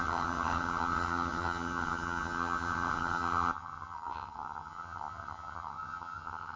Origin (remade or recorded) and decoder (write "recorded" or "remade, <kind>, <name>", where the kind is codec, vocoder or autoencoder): remade, vocoder, HiFi-GAN